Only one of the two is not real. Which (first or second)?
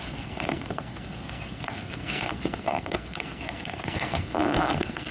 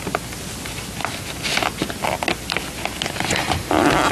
first